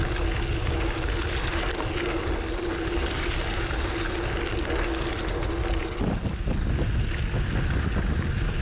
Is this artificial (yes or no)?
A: no